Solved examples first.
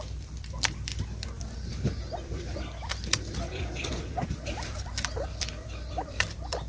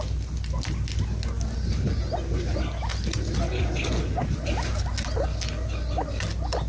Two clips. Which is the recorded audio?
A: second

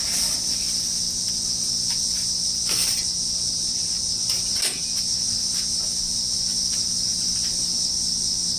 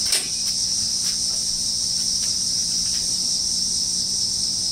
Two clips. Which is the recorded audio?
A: first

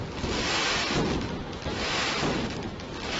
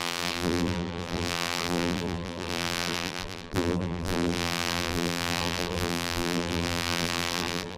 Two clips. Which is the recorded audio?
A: first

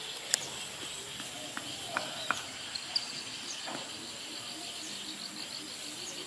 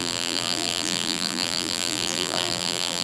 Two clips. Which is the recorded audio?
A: first